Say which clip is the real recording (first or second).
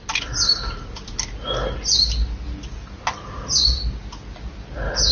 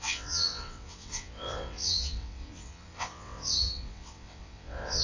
first